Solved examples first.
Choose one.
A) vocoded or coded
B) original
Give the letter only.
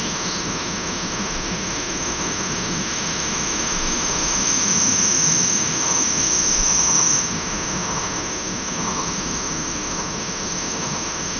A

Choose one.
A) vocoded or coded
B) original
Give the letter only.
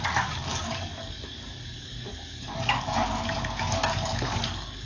A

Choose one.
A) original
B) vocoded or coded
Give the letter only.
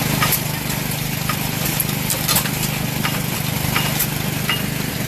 A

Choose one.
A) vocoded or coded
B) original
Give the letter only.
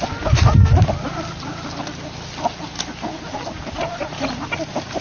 B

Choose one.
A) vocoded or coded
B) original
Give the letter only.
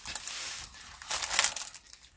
B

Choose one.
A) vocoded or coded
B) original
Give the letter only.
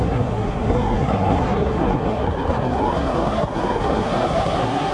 A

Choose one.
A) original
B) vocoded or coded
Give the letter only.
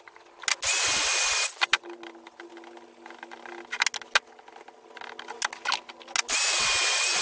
A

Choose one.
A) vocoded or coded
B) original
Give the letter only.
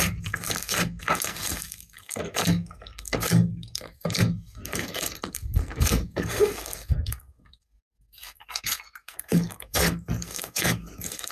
A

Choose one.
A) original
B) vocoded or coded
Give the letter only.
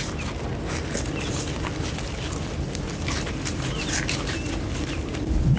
A